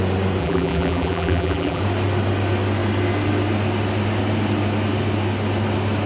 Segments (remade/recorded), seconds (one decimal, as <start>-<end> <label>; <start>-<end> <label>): 0.0-0.4 recorded; 0.4-1.8 remade; 1.8-6.1 recorded